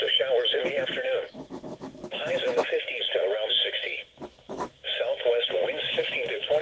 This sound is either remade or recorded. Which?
remade